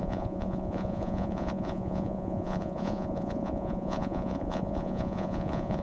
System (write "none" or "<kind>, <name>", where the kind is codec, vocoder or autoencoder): vocoder, Vocos